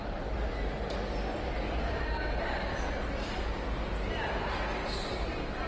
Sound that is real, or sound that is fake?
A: real